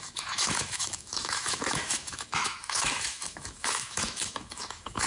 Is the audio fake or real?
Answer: fake